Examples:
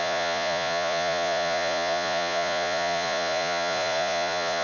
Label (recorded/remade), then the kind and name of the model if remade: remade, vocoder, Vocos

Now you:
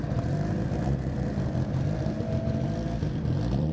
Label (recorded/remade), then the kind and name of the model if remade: remade, vocoder, BigVGAN v2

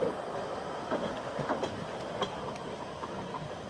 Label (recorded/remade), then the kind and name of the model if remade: recorded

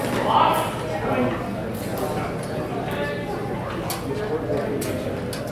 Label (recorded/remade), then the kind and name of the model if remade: recorded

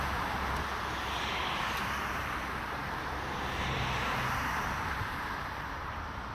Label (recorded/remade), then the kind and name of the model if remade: remade, vocoder, BigVGAN v2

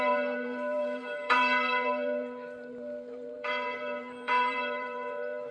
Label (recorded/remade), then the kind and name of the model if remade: remade, vocoder, BigVGAN v2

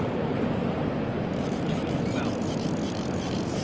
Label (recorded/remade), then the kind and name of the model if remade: remade, vocoder, BigVGAN v2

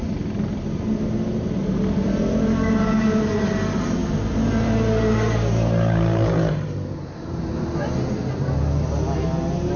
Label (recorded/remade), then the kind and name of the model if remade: recorded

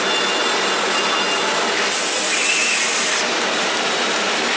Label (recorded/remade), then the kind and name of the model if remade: recorded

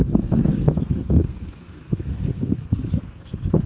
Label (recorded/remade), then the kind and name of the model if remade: remade, codec, SNAC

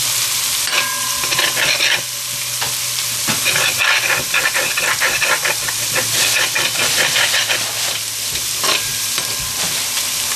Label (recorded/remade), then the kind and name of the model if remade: remade, vocoder, BigVGAN v2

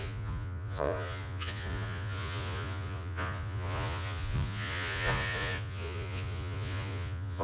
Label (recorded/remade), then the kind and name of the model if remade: remade, vocoder, Vocos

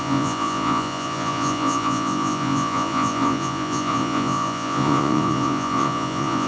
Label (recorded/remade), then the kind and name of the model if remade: remade, vocoder, Vocos